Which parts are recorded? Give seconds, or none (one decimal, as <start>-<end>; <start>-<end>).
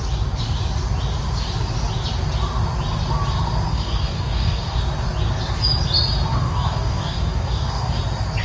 0.0-3.7; 4.8-6.3; 8.0-8.4